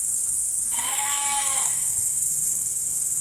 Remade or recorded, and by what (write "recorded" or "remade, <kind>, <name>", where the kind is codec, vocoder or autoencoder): remade, codec, SNAC